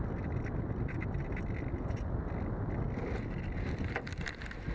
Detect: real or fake real